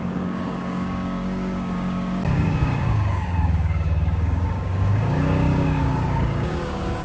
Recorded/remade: remade